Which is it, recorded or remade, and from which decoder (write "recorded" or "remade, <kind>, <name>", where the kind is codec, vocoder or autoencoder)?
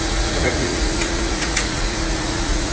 remade, vocoder, Vocos